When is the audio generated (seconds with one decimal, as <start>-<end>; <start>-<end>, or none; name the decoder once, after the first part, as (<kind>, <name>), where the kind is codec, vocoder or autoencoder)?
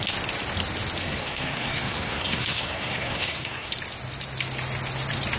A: 1.0-3.7 (codec, SNAC)